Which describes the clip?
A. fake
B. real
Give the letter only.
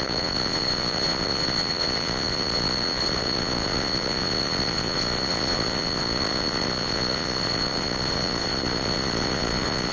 A